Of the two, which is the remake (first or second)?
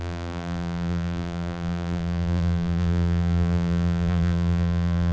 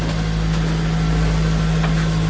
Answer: first